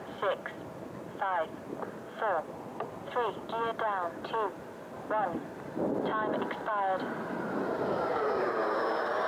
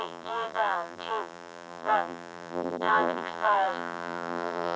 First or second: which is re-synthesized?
second